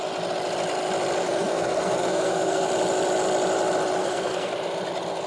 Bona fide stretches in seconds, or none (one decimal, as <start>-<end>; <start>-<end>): 0.0-1.2; 2.7-4.0; 4.5-5.3